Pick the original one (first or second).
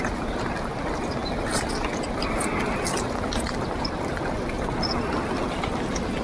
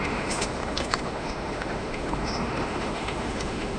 first